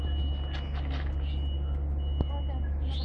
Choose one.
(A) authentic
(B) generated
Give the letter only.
A